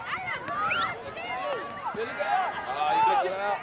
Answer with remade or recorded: recorded